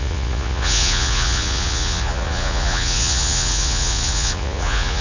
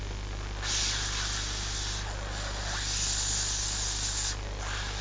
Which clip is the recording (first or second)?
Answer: second